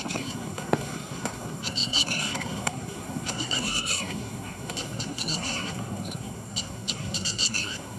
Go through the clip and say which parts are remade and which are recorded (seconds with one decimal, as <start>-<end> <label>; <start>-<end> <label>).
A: 0.0-8.0 remade